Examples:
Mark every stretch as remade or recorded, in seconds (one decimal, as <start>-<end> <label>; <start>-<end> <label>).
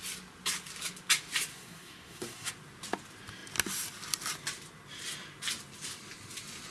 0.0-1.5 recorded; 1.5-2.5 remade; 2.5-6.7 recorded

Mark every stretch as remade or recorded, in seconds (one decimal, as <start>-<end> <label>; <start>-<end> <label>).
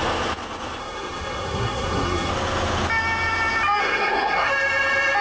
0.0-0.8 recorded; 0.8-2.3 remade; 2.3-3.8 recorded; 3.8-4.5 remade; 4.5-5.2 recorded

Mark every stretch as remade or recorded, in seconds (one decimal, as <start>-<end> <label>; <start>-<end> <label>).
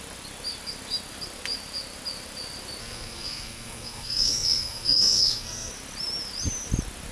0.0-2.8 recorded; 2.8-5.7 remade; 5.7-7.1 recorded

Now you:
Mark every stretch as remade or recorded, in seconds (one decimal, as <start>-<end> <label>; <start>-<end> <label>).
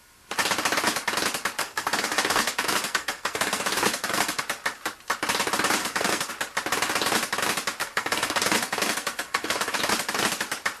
0.0-1.6 recorded; 1.6-4.4 remade; 4.4-5.8 recorded; 5.8-6.3 remade; 6.3-7.8 recorded; 7.8-9.8 remade; 9.8-10.8 recorded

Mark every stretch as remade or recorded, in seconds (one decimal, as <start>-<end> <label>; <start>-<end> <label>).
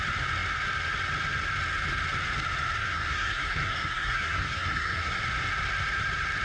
0.0-2.8 recorded; 2.8-5.2 remade; 5.2-6.4 recorded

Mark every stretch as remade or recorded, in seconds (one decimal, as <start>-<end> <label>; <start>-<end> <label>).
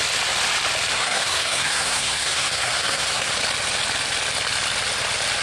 0.0-0.9 recorded; 0.9-3.3 remade; 3.3-5.4 recorded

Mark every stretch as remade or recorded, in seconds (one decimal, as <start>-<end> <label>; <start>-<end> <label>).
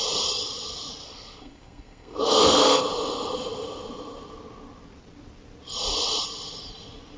0.0-1.0 recorded; 1.0-2.8 remade; 2.8-7.2 recorded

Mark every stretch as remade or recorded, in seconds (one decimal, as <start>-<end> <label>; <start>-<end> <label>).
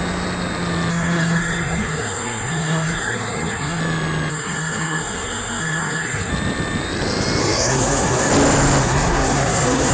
0.0-0.9 recorded; 0.9-3.8 remade; 3.8-4.3 recorded; 4.3-6.3 remade; 6.3-7.4 recorded; 7.4-8.3 remade; 8.3-8.8 recorded; 8.8-9.9 remade